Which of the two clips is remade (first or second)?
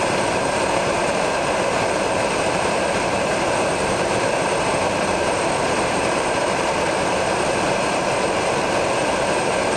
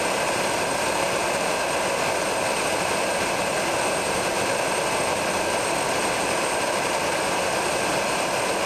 first